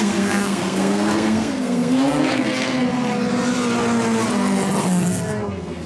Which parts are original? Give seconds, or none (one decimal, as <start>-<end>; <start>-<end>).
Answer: 2.8-4.8

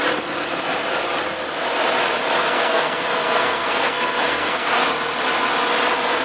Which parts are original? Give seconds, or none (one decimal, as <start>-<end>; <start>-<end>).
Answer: 0.0-2.4; 4.8-6.2

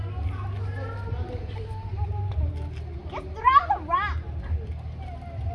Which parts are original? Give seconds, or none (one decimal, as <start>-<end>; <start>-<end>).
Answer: 0.0-5.5

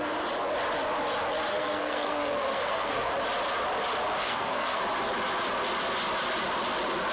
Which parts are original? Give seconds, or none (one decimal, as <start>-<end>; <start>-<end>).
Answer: 0.0-1.5; 3.1-4.2; 4.8-7.1

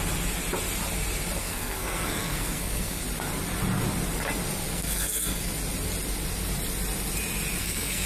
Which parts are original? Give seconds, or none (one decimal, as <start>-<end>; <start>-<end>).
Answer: 0.0-1.4; 3.0-4.7; 5.5-7.6

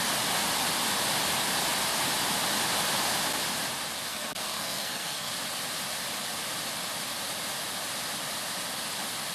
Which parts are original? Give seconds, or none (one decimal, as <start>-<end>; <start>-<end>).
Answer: 0.0-4.1; 5.3-9.3

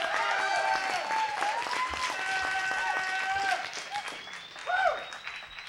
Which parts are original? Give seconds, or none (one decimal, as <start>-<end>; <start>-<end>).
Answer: 0.0-5.7